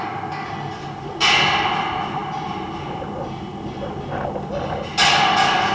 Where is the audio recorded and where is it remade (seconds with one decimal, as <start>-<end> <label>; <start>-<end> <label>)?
0.0-2.2 recorded; 2.2-2.7 remade; 2.7-5.7 recorded